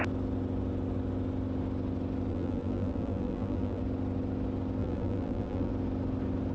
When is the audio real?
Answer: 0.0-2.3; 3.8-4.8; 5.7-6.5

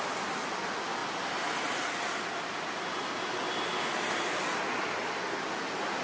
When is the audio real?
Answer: 0.0-6.0

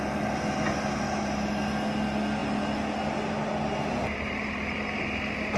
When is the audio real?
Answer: 0.0-5.6

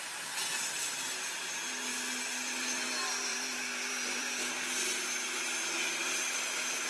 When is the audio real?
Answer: 0.0-3.3; 3.9-6.9

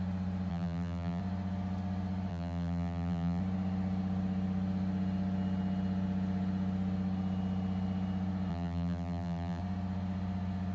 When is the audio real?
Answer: 0.0-0.5; 1.2-2.3; 3.4-8.5; 9.6-10.7